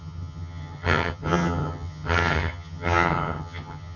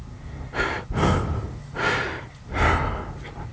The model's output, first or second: first